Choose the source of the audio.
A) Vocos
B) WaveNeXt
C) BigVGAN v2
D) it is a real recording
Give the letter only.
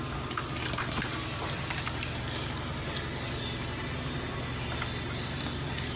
D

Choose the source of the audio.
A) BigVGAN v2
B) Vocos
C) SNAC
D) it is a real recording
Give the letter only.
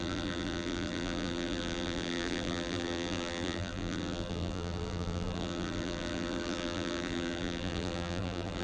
A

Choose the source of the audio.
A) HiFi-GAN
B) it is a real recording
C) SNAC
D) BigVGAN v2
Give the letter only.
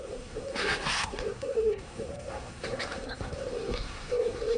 C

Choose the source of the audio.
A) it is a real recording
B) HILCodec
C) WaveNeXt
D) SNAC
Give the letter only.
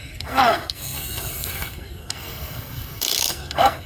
D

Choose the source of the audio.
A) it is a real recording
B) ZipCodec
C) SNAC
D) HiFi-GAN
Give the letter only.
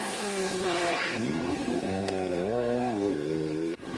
C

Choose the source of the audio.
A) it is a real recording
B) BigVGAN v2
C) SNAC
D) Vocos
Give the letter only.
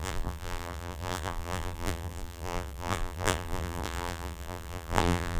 B